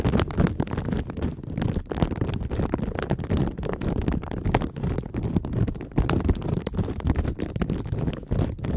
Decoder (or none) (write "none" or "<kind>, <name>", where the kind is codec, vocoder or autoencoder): none